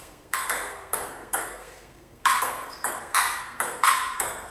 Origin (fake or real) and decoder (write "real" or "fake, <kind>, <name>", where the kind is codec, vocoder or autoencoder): fake, codec, SNAC